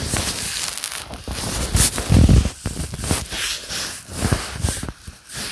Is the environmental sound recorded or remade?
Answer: recorded